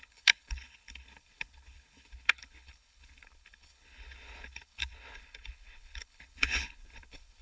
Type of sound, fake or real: fake